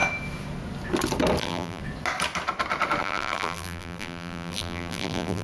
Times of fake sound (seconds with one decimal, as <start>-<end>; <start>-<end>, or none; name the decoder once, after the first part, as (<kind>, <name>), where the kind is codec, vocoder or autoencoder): 1.4-1.8 (vocoder, BigVGAN v2); 3.0-5.4